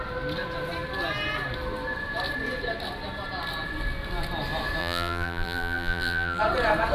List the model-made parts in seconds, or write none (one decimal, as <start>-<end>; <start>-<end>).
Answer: 4.8-6.4